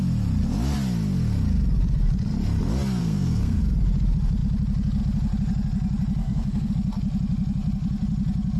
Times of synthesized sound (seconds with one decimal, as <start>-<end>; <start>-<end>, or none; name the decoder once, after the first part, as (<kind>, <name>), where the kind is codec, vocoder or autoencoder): 3.0-3.6 (codec, SNAC); 6.2-6.7